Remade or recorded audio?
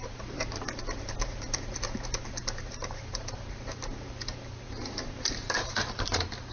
remade